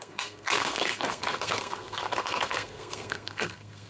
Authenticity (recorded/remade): remade